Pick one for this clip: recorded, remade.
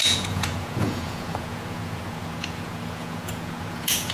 remade